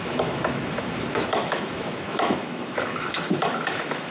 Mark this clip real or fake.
fake